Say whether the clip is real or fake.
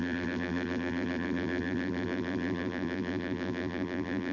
fake